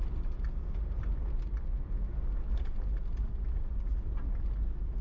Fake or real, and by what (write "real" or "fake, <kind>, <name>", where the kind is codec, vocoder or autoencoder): real